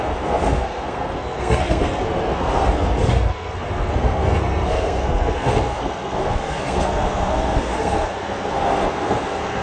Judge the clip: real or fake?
fake